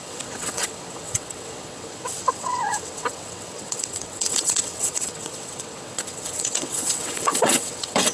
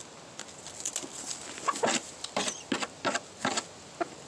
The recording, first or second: second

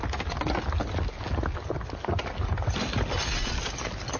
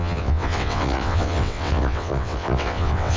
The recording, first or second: first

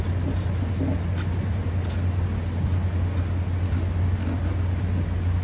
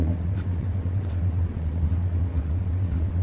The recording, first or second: first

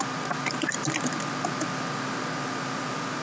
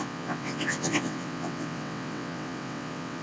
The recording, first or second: first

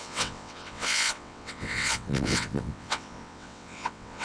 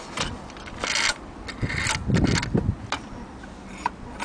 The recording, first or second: second